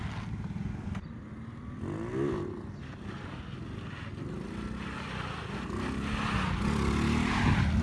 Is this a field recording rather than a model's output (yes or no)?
yes